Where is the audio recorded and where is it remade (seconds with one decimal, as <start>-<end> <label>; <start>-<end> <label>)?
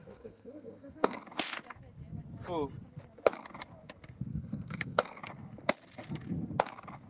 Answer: 0.0-1.2 remade; 1.2-4.3 recorded; 4.3-5.2 remade; 5.2-7.1 recorded